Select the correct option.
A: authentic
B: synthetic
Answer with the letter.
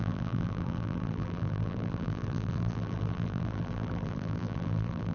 B